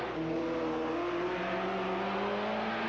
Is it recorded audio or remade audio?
recorded